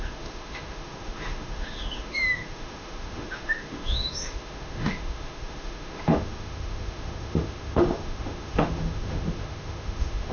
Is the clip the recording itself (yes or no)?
no